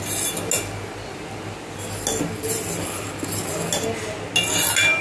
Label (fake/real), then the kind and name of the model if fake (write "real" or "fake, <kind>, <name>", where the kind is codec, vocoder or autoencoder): real